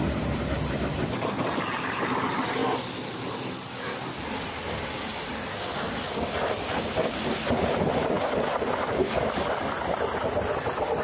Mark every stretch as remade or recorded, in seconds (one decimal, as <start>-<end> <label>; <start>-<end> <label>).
0.0-11.0 recorded